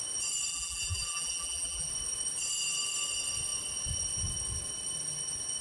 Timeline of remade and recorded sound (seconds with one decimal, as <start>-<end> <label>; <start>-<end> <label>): 0.0-0.5 recorded; 0.5-1.9 remade; 1.9-5.6 recorded